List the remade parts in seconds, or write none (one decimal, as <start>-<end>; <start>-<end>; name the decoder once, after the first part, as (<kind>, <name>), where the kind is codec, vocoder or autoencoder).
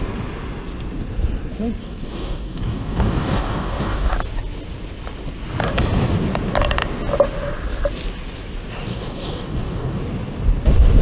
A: 1.8-4.1 (codec, DAC); 8.9-10.0